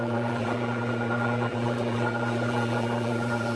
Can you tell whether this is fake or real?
fake